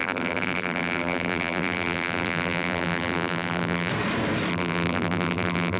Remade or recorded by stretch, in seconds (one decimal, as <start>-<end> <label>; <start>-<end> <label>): 0.0-3.9 remade; 3.9-4.5 recorded; 4.5-5.8 remade